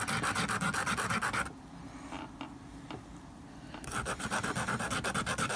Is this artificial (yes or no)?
no